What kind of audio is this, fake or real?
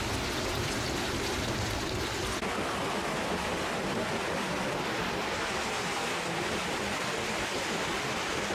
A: real